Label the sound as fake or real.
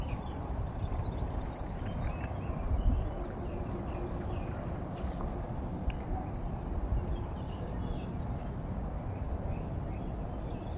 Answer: real